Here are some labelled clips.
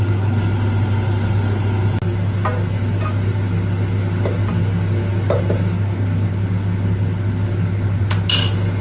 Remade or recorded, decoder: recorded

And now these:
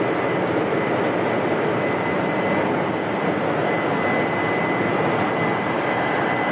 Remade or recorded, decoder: recorded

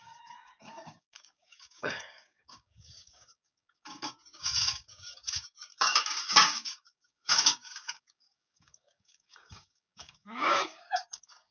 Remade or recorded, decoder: remade, codec, DAC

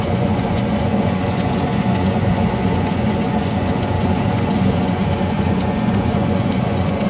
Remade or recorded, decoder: remade, vocoder, Vocos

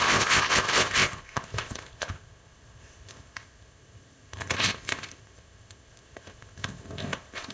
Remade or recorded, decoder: remade, codec, ZipCodec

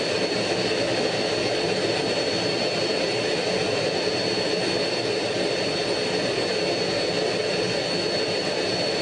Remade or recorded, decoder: recorded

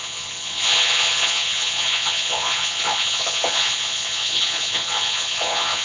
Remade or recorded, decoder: remade, vocoder, Vocos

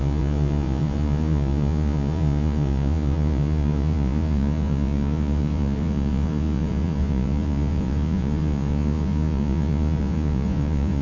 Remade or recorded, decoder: remade, vocoder, Vocos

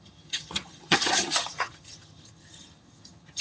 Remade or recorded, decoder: remade, vocoder, HiFi-GAN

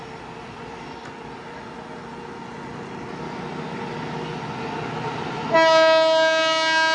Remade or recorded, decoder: recorded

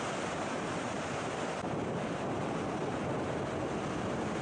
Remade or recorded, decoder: recorded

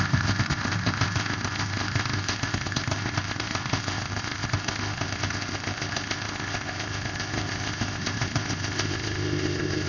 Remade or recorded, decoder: remade, codec, ZipCodec